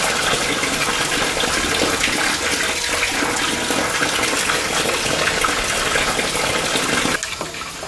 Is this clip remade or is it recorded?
recorded